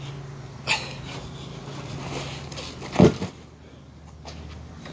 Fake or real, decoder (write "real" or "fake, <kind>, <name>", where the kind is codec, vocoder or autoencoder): real